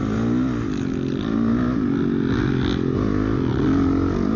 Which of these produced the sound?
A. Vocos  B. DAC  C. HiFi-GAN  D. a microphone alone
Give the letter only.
D